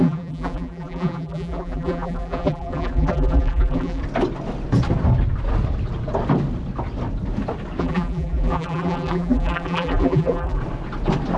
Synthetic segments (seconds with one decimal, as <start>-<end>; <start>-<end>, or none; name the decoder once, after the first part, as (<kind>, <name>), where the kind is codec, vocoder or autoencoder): 0.0-4.0 (vocoder, BigVGAN v2); 7.8-10.6